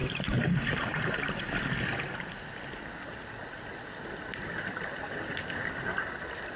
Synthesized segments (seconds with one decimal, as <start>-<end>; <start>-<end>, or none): 0.0-1.6